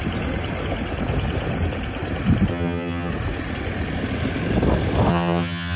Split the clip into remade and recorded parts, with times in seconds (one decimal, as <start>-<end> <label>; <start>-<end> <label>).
0.0-2.5 recorded; 2.5-3.1 remade; 3.1-5.1 recorded; 5.1-5.8 remade